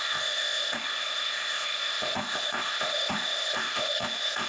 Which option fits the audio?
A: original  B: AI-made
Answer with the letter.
B